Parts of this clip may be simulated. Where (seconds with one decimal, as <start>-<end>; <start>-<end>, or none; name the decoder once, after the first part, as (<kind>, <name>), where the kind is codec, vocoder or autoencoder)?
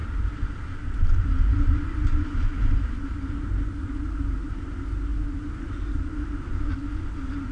none